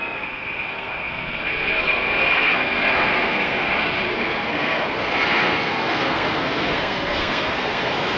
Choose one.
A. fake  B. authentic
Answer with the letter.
A